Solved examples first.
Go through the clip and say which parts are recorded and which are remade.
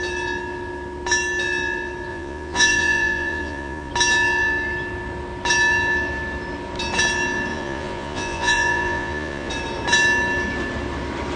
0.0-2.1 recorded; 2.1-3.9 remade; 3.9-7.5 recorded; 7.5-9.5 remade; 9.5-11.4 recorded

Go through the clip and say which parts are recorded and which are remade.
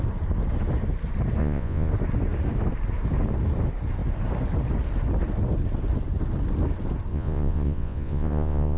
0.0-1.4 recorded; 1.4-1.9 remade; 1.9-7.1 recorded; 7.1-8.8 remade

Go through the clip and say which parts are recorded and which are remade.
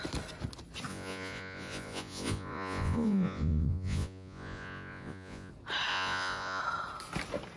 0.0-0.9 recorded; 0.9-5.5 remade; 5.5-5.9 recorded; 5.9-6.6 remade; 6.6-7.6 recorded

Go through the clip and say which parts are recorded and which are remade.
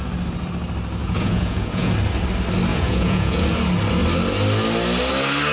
0.0-1.0 recorded; 1.0-1.9 remade; 1.9-2.7 recorded; 2.7-3.4 remade; 3.4-5.5 recorded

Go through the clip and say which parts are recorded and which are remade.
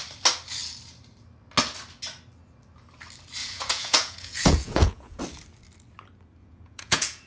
0.0-3.4 recorded; 3.4-5.2 remade; 5.2-6.4 recorded; 6.4-7.3 remade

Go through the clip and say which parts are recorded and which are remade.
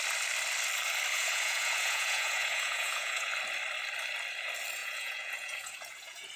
0.0-1.1 recorded; 1.1-3.3 remade; 3.3-4.8 recorded; 4.8-6.4 remade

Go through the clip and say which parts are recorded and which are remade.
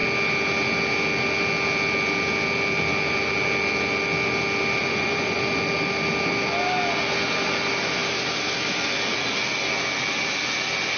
0.0-4.8 recorded; 4.8-5.4 remade; 5.4-11.0 recorded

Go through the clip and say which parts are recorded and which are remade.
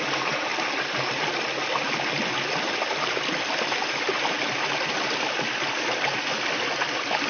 0.0-7.3 recorded